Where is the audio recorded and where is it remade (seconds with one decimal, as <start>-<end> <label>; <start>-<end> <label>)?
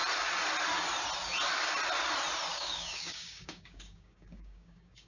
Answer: 0.0-2.5 recorded; 2.5-5.1 remade